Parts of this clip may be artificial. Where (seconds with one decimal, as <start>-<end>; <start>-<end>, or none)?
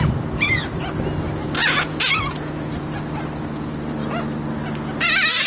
1.6-2.9